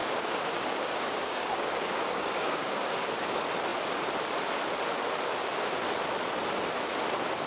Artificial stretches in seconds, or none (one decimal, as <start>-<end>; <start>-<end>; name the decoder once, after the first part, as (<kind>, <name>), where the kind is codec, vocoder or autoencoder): 0.0-3.1 (codec, DAC)